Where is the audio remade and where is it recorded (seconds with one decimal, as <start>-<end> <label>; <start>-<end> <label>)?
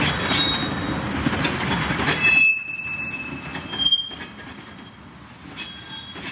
0.0-6.3 recorded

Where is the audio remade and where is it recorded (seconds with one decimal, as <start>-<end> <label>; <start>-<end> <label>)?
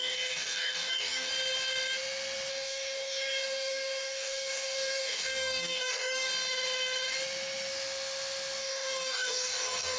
0.0-1.3 remade; 1.3-2.5 recorded; 2.5-6.3 remade; 6.3-8.6 recorded; 8.6-10.0 remade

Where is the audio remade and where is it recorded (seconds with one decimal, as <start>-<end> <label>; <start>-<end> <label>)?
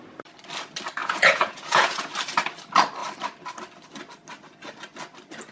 0.0-1.0 recorded; 1.0-2.1 remade; 2.1-5.5 recorded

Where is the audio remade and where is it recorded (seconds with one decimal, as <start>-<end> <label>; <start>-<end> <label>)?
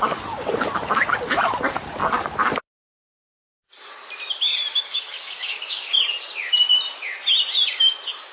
0.0-4.7 recorded; 4.7-5.9 remade; 5.9-8.3 recorded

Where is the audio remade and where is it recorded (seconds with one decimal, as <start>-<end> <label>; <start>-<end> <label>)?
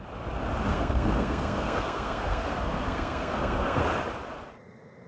0.0-0.7 recorded; 0.7-3.8 remade; 3.8-5.1 recorded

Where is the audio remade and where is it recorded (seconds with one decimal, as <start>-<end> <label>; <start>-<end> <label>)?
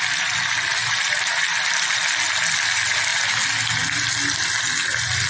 0.0-5.3 recorded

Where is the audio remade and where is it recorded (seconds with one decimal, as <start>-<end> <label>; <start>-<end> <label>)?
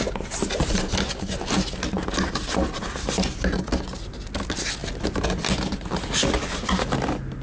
0.0-7.4 recorded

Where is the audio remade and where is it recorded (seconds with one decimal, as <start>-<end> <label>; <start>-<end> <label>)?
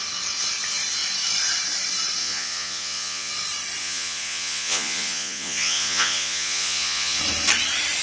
0.0-2.2 recorded; 2.2-3.3 remade; 3.3-3.8 recorded; 3.8-7.2 remade; 7.2-8.0 recorded